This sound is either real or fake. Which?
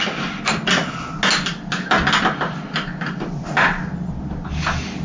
real